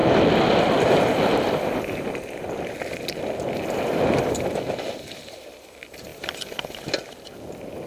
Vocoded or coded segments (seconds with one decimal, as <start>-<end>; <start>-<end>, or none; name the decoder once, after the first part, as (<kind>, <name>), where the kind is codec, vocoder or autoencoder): 0.6-7.9 (vocoder, BigVGAN v2)